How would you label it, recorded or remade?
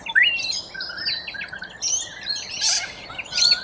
recorded